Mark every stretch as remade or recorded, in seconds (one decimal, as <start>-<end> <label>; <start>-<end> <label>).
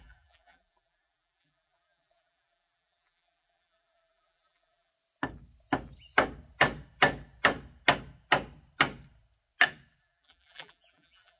0.0-4.9 remade; 4.9-10.0 recorded; 10.0-11.4 remade